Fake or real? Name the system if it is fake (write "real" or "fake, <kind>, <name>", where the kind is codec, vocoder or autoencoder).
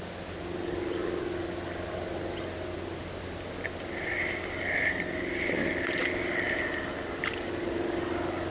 real